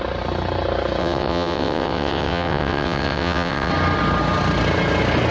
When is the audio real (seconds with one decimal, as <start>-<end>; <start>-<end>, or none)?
0.0-1.0; 3.7-5.3